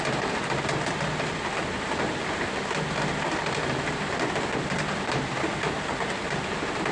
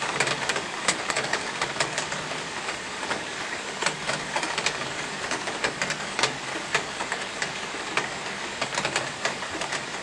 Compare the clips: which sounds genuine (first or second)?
first